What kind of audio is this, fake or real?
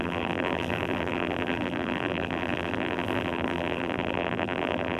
fake